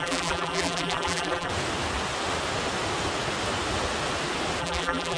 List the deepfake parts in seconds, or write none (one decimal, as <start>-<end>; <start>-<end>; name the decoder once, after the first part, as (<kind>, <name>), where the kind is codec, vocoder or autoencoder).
0.0-1.5 (vocoder, BigVGAN v2); 4.6-5.2